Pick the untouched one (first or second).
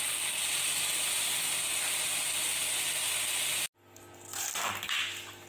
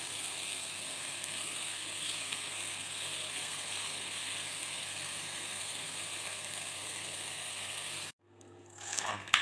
first